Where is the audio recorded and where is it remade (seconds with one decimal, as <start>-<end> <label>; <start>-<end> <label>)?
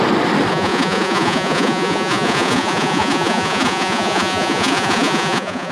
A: 0.0-0.5 recorded; 0.5-5.7 remade